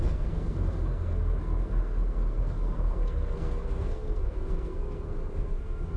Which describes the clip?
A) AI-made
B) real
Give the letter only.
A